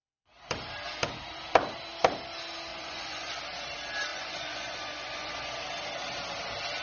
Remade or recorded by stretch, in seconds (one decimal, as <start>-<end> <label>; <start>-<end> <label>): 0.0-2.7 recorded; 2.7-3.3 remade; 3.3-4.1 recorded; 4.1-5.5 remade; 5.5-6.8 recorded